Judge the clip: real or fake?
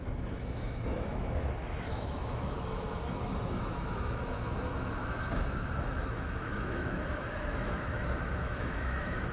fake